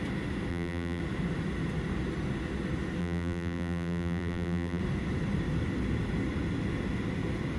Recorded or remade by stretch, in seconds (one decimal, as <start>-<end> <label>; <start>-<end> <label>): 0.0-0.5 recorded; 0.5-1.0 remade; 1.0-3.0 recorded; 3.0-4.8 remade; 4.8-7.6 recorded